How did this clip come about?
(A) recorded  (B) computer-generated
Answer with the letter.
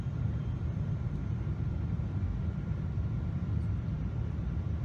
A